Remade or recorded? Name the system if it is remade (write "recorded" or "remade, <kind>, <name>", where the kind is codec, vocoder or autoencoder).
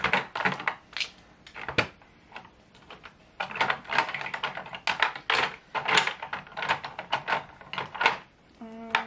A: recorded